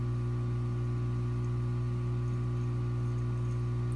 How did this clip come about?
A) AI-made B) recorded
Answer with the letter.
B